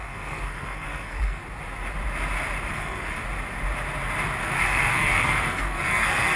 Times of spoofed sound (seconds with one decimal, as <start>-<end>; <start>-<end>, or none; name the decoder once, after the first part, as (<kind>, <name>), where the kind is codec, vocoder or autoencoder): 0.0-1.4 (codec, SNAC); 2.7-3.2; 4.4-6.4